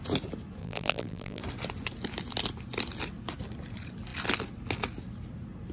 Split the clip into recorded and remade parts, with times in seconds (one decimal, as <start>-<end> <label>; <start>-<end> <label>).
0.0-0.6 recorded; 0.6-1.4 remade; 1.4-5.7 recorded